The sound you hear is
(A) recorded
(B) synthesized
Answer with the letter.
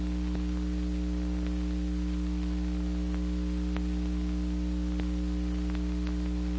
A